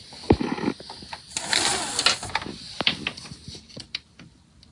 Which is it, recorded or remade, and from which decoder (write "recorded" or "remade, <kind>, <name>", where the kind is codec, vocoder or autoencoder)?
recorded